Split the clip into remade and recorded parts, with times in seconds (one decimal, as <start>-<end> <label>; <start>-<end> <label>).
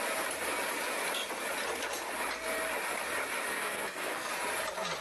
0.0-3.5 recorded; 3.5-4.3 remade; 4.3-5.0 recorded